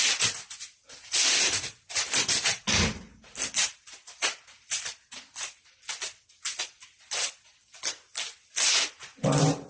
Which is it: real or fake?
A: real